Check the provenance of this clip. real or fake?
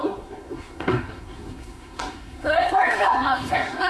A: fake